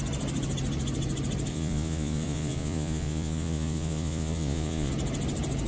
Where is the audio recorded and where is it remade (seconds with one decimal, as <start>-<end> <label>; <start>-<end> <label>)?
0.0-1.5 recorded; 1.5-4.9 remade; 4.9-5.7 recorded